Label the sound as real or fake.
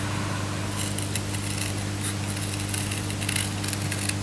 real